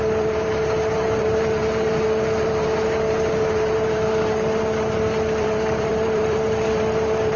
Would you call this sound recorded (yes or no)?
no